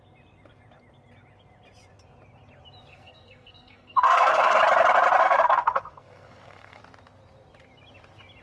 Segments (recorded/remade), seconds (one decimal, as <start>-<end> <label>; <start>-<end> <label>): 0.0-2.9 recorded; 2.9-4.6 remade; 4.6-5.2 recorded; 5.2-6.8 remade; 6.8-8.4 recorded

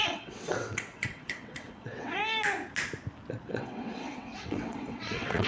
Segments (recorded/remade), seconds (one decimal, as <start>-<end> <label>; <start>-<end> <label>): 0.0-2.2 remade; 2.2-3.5 recorded; 3.5-5.5 remade

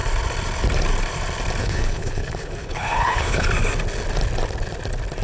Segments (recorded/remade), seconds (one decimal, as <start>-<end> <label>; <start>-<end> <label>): 0.0-1.6 recorded; 1.6-3.5 remade; 3.5-5.2 recorded